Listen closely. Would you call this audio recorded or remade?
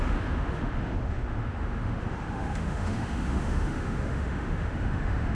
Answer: remade